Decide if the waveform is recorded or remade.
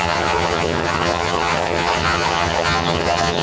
remade